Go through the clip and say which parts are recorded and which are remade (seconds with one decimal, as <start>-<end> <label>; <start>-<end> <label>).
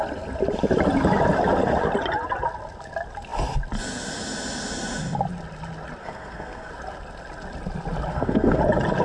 0.0-6.0 recorded; 6.0-6.7 remade; 6.7-8.1 recorded; 8.1-8.6 remade; 8.6-9.0 recorded